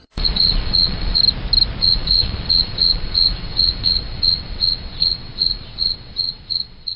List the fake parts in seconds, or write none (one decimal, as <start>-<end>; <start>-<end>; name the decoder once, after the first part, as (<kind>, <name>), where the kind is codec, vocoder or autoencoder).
0.0-1.2 (vocoder, WaveNeXt); 1.8-7.0